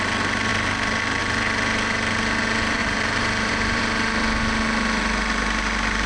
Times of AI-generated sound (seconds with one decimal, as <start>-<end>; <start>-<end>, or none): 2.8-3.8